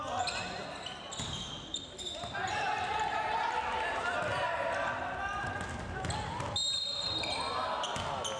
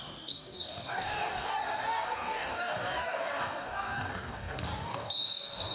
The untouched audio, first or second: first